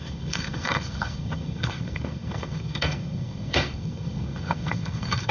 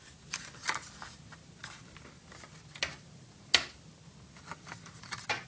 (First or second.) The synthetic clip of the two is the first